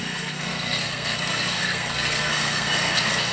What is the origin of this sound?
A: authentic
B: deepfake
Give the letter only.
B